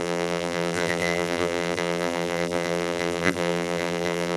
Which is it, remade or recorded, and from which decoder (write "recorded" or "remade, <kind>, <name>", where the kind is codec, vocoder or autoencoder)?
remade, vocoder, BigVGAN v2